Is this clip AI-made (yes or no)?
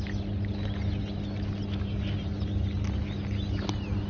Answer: no